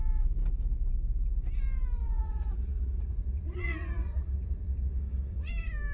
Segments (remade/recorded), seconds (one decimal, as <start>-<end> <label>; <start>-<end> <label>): 0.0-2.0 recorded; 2.0-5.5 remade; 5.5-5.9 recorded